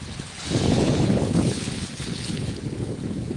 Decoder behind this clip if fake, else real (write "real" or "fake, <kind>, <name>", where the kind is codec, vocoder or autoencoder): fake, codec, HILCodec